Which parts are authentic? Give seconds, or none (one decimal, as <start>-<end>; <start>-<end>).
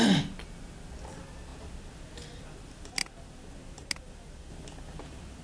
0.0-5.4